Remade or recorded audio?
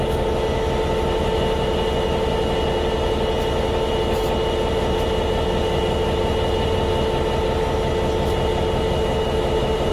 recorded